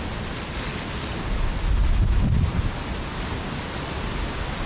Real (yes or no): yes